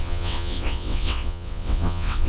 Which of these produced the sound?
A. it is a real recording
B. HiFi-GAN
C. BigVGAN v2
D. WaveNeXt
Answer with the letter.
D